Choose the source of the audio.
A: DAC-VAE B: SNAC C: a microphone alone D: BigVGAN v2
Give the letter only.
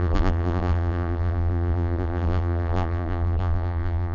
D